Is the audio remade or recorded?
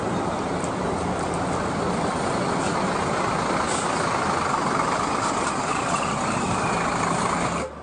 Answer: recorded